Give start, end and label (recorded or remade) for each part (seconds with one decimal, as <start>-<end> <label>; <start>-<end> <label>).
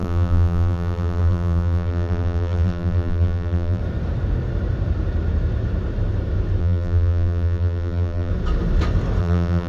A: 0.0-3.8 remade; 3.8-6.6 recorded; 6.6-8.3 remade; 8.3-9.2 recorded; 9.2-9.7 remade